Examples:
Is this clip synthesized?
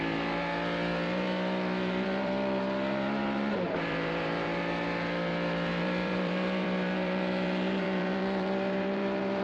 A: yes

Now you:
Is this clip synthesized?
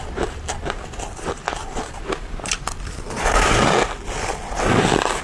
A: yes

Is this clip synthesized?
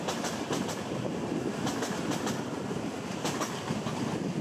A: no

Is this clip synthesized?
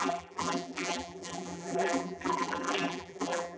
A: yes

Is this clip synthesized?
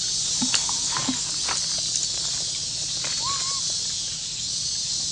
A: no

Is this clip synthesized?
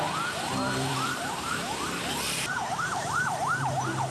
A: yes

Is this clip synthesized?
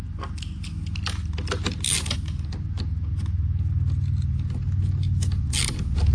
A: no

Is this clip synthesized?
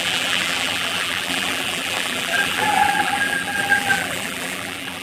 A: yes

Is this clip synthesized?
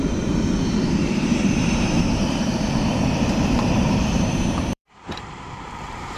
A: yes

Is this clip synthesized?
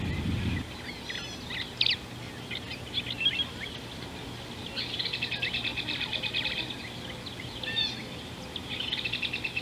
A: no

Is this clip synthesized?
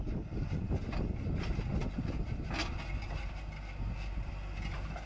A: no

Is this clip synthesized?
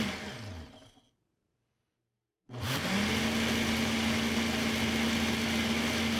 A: no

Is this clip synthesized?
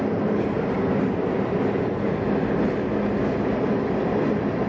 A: no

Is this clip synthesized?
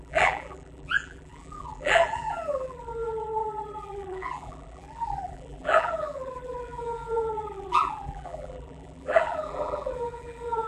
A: yes